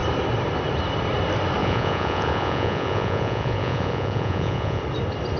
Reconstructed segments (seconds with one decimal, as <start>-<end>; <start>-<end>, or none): 1.6-4.8